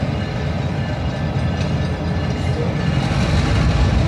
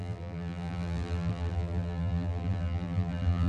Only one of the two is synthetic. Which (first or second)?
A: second